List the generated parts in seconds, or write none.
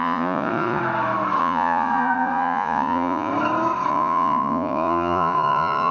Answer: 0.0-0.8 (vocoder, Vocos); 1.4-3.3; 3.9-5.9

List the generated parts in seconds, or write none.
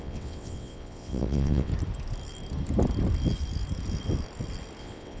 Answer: 0.0-1.7 (vocoder, WaveNeXt); 4.8-5.2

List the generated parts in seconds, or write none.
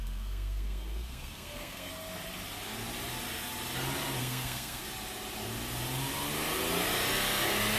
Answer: 0.0-1.9 (codec, SNAC); 4.2-4.8